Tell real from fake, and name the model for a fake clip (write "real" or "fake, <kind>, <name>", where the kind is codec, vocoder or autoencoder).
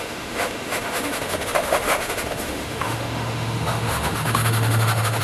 fake, autoencoder, DAC-VAE